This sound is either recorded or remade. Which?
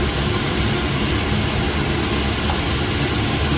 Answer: recorded